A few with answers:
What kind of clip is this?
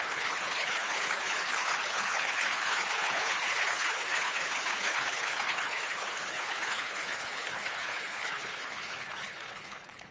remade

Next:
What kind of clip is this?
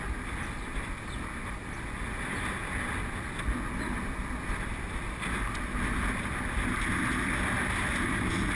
recorded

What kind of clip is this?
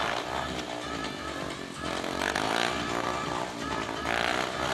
recorded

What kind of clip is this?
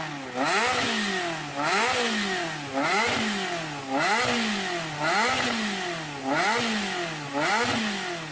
recorded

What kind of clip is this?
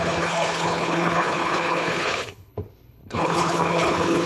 remade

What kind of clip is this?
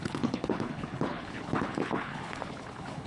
remade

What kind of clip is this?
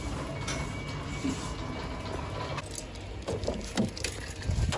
recorded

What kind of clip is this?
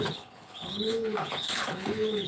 remade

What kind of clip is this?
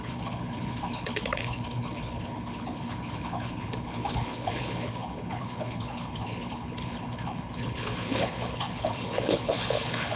remade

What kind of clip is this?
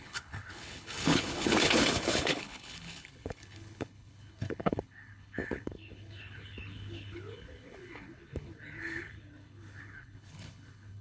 remade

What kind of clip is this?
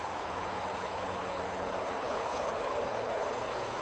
remade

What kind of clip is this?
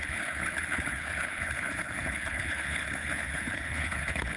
remade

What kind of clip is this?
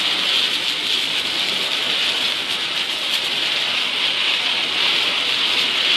recorded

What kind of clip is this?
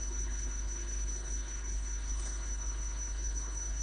remade